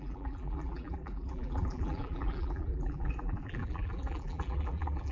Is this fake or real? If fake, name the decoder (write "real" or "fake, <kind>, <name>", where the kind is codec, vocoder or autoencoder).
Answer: fake, vocoder, BigVGAN v2